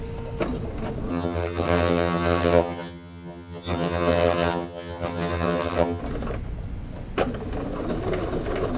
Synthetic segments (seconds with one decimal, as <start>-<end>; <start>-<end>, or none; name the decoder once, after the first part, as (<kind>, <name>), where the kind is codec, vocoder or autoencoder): 1.1-6.0 (vocoder, HiFi-GAN)